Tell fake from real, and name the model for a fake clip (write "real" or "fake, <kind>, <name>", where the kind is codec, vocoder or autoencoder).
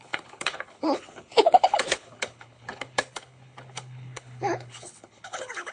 fake, codec, HILCodec